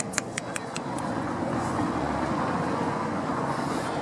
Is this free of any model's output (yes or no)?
no